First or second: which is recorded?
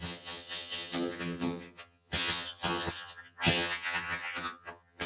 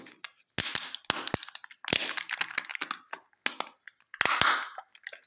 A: second